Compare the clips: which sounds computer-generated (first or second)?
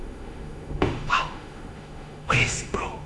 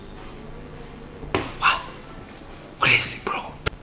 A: first